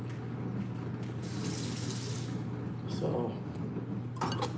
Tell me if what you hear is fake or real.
real